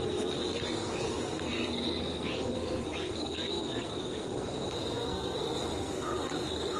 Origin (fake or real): fake